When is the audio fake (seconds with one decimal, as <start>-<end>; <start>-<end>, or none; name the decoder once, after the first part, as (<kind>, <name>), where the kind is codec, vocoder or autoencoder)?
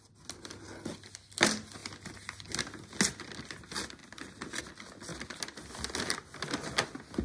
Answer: none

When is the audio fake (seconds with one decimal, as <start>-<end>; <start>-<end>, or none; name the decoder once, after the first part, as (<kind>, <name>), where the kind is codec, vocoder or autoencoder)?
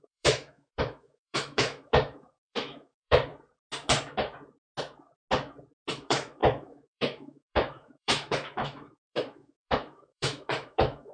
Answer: 0.0-3.3 (autoencoder, DAC-VAE); 5.9-11.1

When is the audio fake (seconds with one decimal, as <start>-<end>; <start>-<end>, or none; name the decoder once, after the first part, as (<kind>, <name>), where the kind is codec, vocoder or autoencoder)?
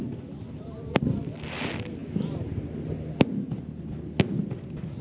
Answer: none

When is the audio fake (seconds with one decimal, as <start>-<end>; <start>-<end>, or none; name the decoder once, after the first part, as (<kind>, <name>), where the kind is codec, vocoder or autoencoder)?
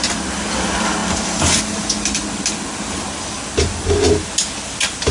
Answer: none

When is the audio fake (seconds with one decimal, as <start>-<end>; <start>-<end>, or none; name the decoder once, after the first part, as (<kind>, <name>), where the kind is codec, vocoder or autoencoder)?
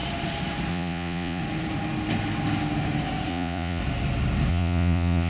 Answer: 0.7-1.4 (vocoder, Vocos); 3.3-3.8; 4.5-5.3